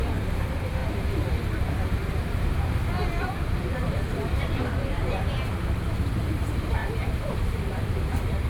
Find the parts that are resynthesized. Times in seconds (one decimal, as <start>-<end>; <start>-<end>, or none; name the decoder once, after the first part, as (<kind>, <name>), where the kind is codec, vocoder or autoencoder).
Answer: 0.8-3.9 (vocoder, BigVGAN v2); 6.8-8.5